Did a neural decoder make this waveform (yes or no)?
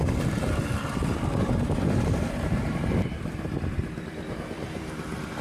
yes